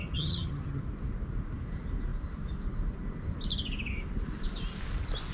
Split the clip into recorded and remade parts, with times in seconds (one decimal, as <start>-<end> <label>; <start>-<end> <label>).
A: 0.0-0.8 remade; 0.8-5.3 recorded